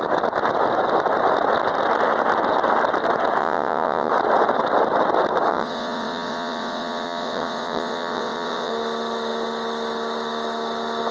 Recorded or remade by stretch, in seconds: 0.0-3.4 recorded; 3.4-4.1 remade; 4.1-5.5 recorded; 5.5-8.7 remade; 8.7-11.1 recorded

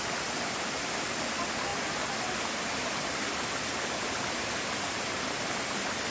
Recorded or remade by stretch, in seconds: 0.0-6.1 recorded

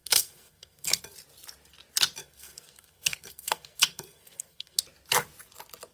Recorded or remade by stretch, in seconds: 0.0-1.0 remade; 1.0-2.2 recorded; 2.2-4.8 remade; 4.8-5.9 recorded

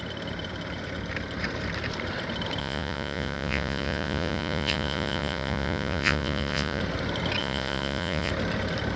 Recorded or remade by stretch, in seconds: 0.0-2.6 recorded; 2.6-6.8 remade; 6.8-7.4 recorded; 7.4-8.3 remade; 8.3-9.0 recorded

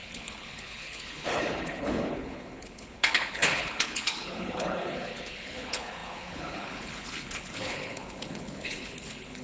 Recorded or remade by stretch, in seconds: 0.0-9.4 remade